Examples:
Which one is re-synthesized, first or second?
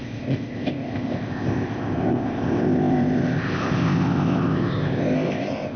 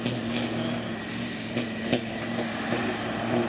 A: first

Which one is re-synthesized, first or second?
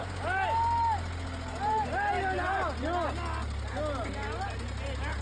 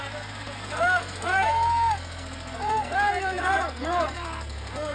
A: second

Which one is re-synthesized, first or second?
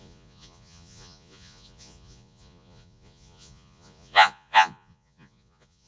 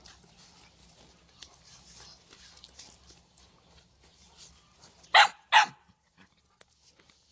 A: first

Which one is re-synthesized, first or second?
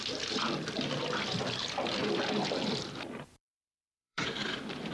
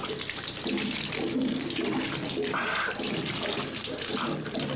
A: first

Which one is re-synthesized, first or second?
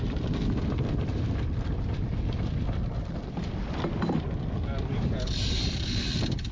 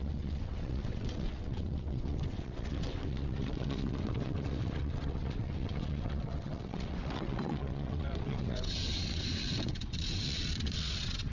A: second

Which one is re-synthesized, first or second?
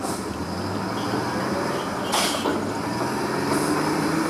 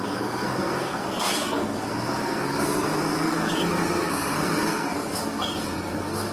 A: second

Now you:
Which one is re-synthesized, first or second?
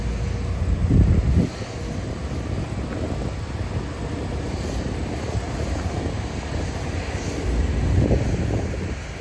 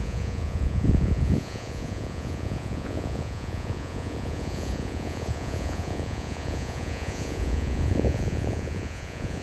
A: second